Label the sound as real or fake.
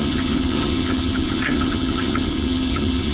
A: fake